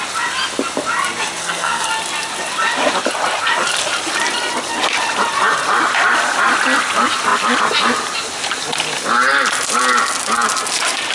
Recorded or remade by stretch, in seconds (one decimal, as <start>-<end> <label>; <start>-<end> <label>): 0.0-1.4 recorded; 1.4-1.9 remade; 1.9-11.1 recorded